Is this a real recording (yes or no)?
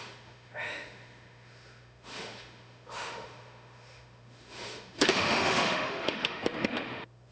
no